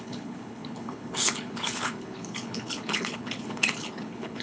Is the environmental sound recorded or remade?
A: remade